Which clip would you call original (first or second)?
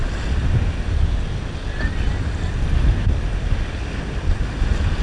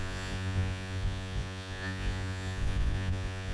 first